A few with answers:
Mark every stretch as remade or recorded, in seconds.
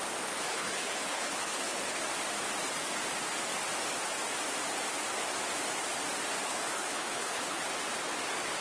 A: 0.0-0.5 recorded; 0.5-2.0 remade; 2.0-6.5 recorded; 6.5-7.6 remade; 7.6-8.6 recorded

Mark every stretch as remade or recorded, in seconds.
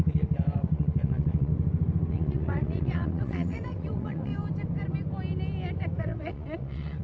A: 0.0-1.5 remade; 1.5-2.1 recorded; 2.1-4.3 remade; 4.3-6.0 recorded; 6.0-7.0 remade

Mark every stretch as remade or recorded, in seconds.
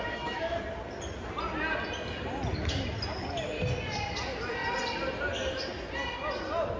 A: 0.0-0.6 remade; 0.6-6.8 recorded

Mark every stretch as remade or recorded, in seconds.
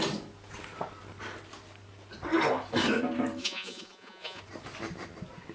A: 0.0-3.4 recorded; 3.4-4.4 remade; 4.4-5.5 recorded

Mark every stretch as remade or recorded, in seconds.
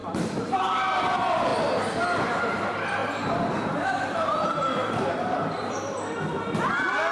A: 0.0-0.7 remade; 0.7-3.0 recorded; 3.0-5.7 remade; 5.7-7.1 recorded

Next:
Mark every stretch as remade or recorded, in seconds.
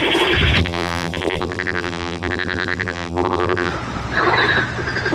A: 0.0-0.6 recorded; 0.6-3.7 remade; 3.7-5.1 recorded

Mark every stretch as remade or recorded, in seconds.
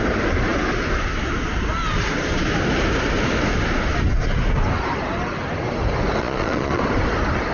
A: 0.0-6.2 recorded; 6.2-6.8 remade; 6.8-7.5 recorded